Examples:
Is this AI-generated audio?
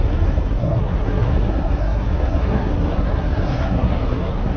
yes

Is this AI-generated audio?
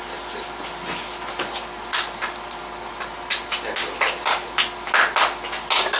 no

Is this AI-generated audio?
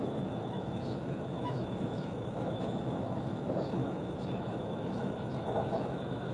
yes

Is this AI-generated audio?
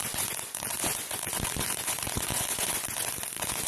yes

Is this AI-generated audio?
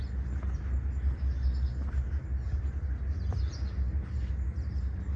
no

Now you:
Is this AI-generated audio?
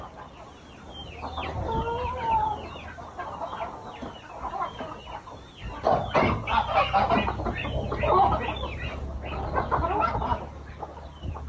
no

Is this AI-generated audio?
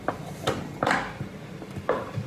no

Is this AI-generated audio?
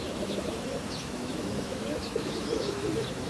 yes